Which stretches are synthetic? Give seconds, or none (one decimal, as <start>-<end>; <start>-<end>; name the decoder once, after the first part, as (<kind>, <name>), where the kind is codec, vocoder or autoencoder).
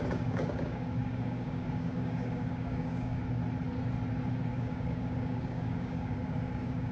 0.0-3.4 (codec, DAC); 4.5-6.9